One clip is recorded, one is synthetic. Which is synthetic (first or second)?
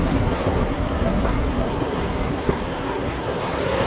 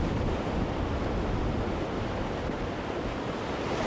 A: first